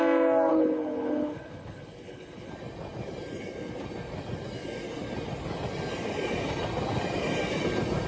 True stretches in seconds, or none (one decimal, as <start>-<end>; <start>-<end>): 0.0-0.5; 2.5-8.1